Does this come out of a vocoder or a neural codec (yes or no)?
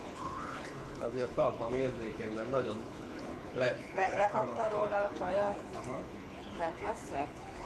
yes